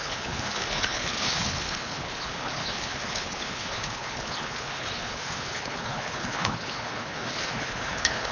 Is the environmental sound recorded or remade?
remade